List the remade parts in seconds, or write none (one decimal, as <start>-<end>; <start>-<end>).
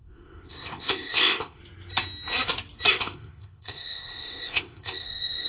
0.0-1.6; 2.9-5.5